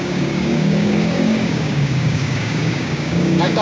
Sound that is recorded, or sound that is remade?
remade